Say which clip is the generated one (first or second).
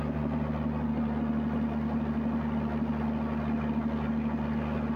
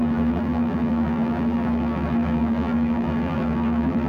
second